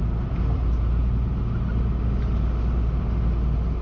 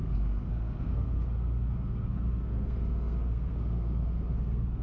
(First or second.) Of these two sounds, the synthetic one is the second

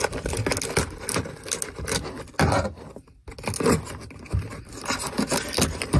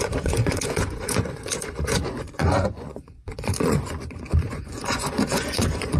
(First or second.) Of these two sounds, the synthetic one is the second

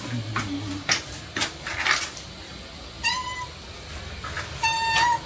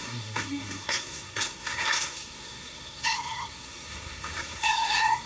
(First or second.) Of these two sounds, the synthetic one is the second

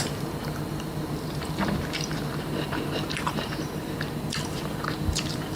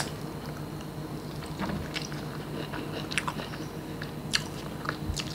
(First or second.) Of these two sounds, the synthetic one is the first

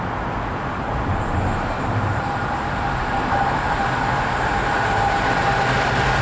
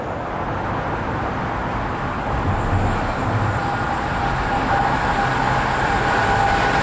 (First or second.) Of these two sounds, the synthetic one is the first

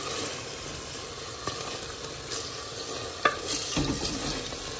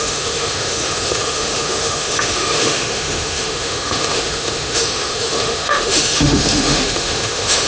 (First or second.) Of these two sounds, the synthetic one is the second